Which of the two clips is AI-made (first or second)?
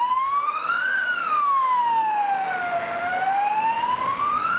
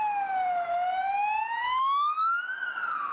first